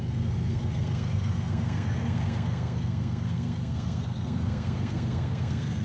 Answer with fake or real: fake